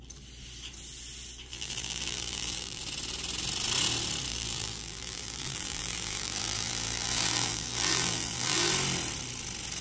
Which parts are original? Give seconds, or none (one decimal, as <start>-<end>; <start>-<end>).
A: 0.0-1.5; 2.8-4.3; 8.7-9.8